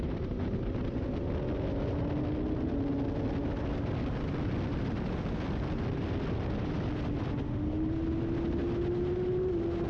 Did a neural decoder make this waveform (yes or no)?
no